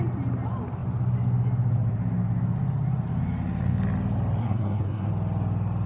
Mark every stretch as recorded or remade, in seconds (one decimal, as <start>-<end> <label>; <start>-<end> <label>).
0.0-4.4 recorded; 4.4-5.1 remade; 5.1-5.9 recorded